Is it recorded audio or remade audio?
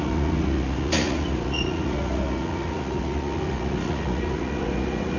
remade